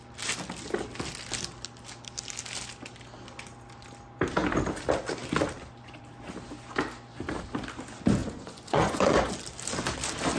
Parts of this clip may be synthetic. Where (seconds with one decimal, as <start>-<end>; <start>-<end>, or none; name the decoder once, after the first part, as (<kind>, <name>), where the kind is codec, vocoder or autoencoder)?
8.2-9.3 (vocoder, Vocos)